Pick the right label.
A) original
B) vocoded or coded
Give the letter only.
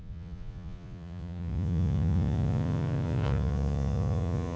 B